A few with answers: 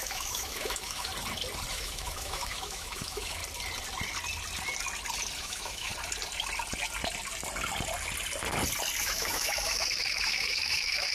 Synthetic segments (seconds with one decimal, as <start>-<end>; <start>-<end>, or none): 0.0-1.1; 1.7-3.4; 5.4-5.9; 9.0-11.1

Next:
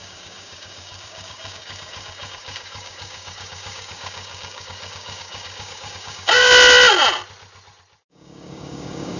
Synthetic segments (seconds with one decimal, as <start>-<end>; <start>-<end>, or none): 0.0-6.5; 8.1-9.2

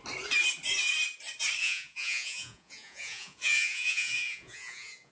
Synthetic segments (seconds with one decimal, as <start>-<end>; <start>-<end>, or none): 1.6-5.1